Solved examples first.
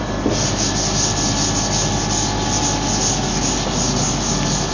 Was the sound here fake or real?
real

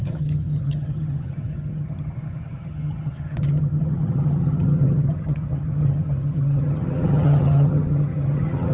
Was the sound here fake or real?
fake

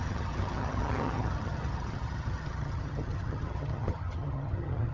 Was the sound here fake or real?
fake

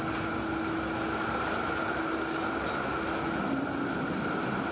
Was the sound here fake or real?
real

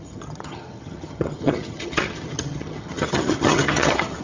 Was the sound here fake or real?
fake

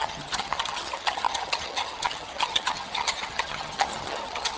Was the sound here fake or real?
fake